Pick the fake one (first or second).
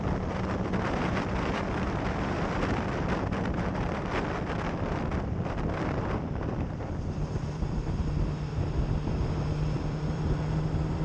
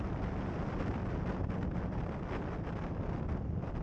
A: first